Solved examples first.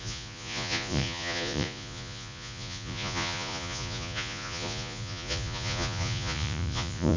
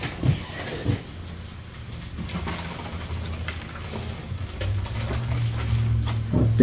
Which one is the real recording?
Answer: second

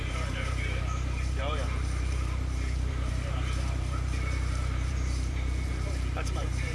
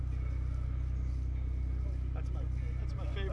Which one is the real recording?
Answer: second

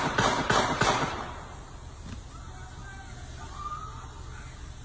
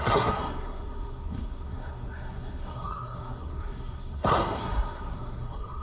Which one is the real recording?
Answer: first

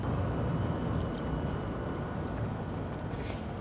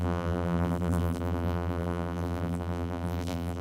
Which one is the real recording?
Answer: first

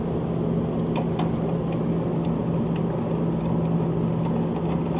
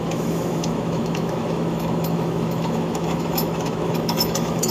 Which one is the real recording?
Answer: first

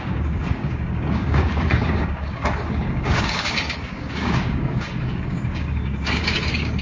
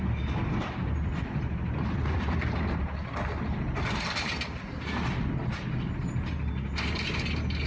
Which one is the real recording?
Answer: second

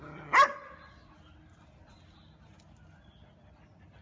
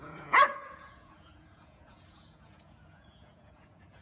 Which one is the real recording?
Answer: first